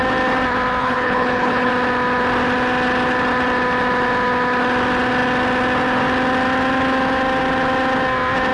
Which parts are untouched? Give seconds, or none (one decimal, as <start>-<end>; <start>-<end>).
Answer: 0.0-0.8; 1.7-8.5